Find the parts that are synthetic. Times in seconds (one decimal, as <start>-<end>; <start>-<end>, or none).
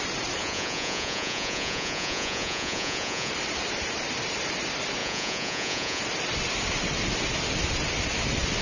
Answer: 0.4-3.3; 5.0-6.0